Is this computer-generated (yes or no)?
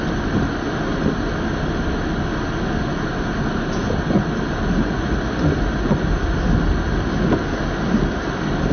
no